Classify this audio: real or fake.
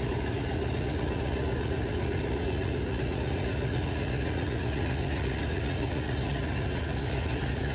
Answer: fake